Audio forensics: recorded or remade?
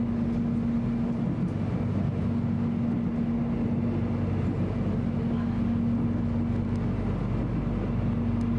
recorded